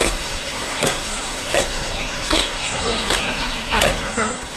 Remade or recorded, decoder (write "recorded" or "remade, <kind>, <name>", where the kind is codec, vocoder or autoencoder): remade, codec, SNAC